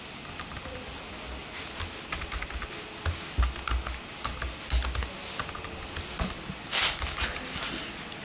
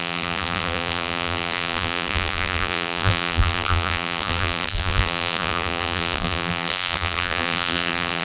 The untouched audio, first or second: first